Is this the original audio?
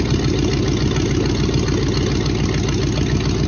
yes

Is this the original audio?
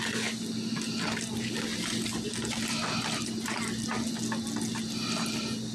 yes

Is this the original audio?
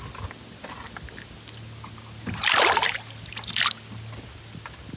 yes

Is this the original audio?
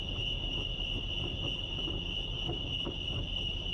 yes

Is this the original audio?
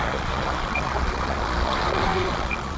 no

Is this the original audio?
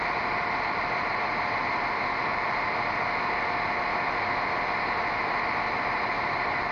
yes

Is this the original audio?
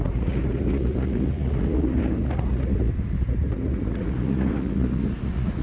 no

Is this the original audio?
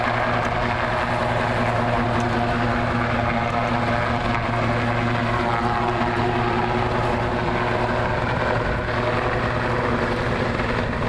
yes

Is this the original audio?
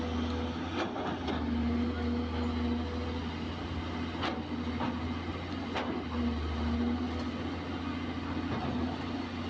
yes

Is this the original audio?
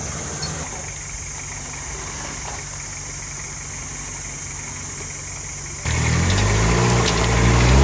yes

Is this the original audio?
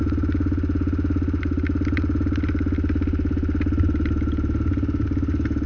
yes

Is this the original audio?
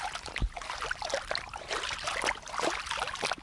yes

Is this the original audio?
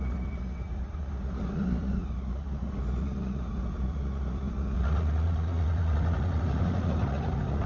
no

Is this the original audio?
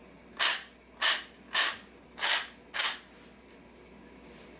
yes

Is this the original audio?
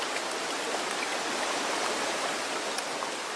yes